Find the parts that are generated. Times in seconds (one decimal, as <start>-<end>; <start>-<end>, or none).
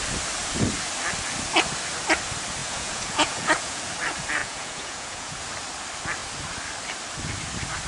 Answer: 2.6-3.9; 4.4-5.4